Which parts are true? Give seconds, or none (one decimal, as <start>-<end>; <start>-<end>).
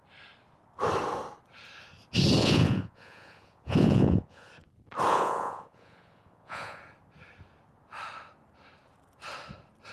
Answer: 0.0-2.4; 4.5-5.1; 6.8-9.9